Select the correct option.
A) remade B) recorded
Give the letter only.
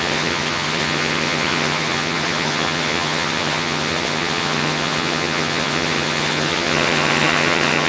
A